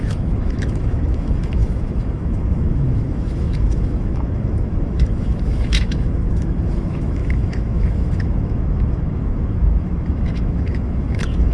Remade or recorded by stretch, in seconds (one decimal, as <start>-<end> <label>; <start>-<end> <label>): 0.0-11.5 remade